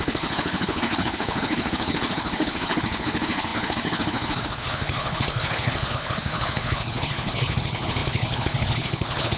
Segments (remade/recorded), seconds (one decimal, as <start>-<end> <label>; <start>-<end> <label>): 0.0-9.4 remade